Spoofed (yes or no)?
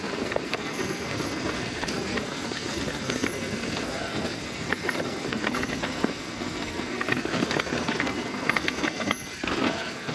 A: yes